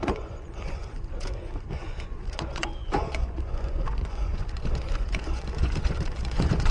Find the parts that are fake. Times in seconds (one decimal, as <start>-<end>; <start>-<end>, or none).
0.0-6.7